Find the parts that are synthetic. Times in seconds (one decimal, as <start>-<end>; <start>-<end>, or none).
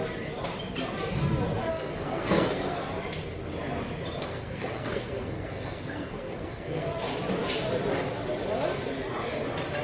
1.7-2.8; 4.2-6.9